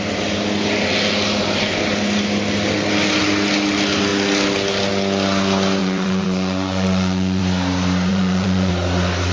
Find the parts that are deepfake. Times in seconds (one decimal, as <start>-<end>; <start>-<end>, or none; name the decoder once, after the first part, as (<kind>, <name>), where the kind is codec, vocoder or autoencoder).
5.8-7.4 (vocoder, Vocos); 8.1-8.7